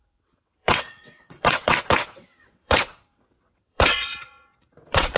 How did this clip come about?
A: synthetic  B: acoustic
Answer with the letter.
A